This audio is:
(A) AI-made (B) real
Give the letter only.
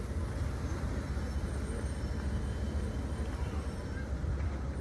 B